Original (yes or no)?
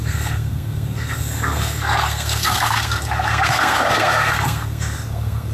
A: no